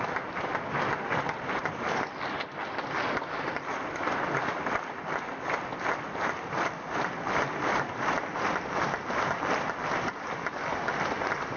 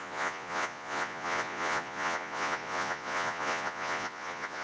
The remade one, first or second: second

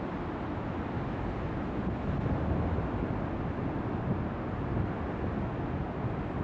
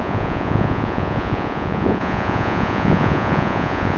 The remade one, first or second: second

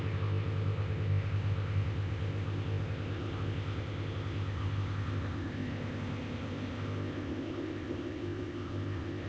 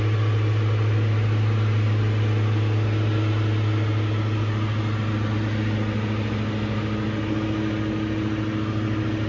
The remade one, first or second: first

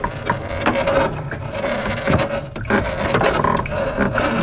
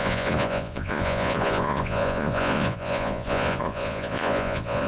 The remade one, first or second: second